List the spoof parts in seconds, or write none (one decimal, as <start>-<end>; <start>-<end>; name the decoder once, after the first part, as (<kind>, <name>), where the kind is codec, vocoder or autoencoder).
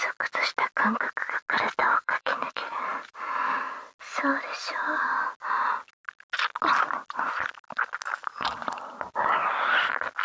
1.8-3.2 (vocoder, BigVGAN v2); 8.6-9.2